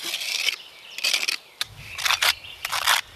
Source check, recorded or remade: remade